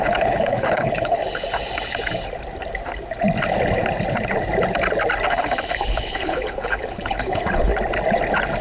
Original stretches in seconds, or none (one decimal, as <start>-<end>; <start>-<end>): 1.2-5.3; 7.7-8.6